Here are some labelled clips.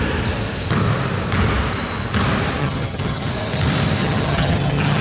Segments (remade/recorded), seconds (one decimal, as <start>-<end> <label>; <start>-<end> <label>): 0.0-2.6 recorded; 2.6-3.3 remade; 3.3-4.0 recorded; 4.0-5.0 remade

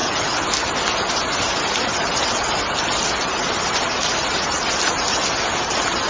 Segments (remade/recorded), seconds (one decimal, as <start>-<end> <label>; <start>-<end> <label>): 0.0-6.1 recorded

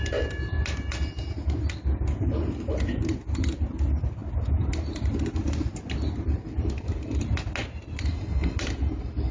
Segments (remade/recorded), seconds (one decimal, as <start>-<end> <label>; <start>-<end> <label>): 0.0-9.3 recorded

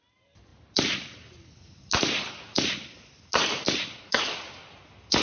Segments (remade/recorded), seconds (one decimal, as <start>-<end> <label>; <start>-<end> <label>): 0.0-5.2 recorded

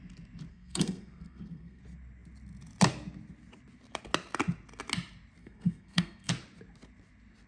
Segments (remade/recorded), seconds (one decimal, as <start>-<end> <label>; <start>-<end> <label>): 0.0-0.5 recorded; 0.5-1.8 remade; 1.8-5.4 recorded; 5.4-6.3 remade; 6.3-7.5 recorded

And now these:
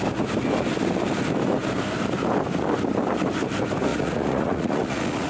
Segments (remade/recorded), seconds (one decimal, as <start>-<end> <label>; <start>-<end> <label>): 0.0-3.9 recorded; 3.9-5.3 remade

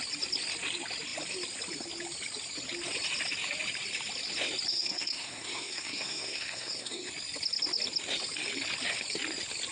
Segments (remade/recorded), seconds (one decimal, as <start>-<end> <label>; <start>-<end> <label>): 0.0-4.7 recorded; 4.7-7.1 remade; 7.1-9.7 recorded

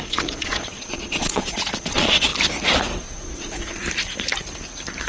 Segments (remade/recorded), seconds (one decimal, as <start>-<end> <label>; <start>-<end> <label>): 0.0-2.3 remade; 2.3-3.0 recorded; 3.0-3.8 remade; 3.8-5.1 recorded